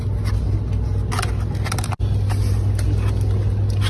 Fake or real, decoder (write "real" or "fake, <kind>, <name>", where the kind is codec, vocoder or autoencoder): real